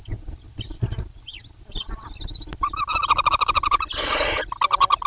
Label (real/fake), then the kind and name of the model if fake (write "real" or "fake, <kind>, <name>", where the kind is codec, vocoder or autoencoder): real